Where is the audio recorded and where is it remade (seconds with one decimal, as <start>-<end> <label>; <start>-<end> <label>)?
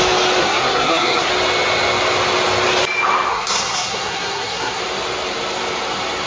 0.0-0.4 recorded; 0.4-1.3 remade; 1.3-3.3 recorded; 3.3-4.8 remade; 4.8-6.3 recorded